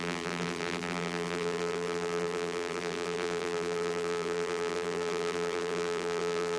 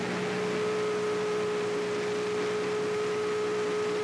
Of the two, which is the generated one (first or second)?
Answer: first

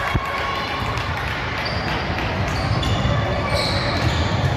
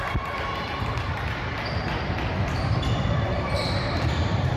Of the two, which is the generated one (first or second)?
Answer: second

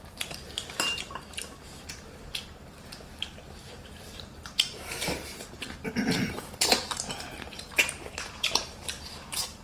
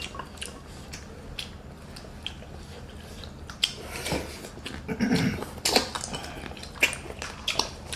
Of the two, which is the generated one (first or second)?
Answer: first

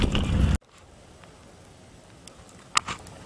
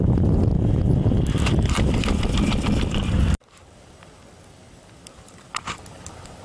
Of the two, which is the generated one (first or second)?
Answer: second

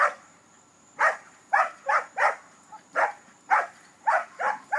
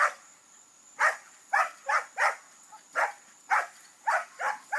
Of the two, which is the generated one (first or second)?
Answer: first